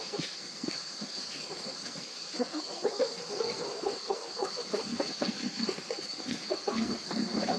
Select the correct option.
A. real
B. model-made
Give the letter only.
B